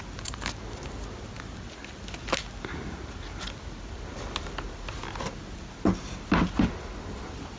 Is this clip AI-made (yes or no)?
no